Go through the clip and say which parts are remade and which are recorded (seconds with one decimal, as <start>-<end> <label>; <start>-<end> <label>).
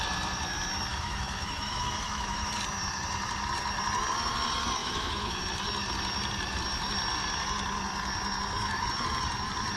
0.0-0.9 recorded; 0.9-2.5 remade; 2.5-4.8 recorded; 4.8-5.4 remade; 5.4-9.8 recorded